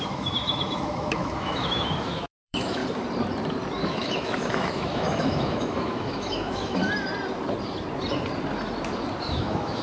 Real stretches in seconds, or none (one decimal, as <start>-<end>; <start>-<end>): 2.8-3.8; 6.8-9.3